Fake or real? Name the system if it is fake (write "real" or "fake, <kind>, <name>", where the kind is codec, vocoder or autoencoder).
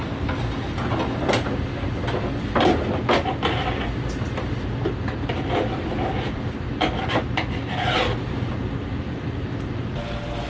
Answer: real